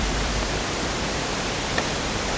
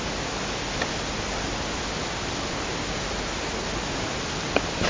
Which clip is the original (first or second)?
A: second